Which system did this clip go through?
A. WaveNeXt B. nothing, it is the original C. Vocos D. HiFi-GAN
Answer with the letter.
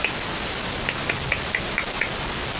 B